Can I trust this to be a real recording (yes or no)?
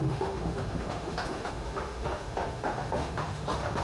no